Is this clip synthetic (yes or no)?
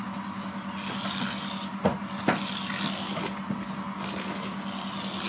no